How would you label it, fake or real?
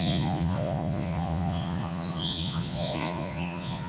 fake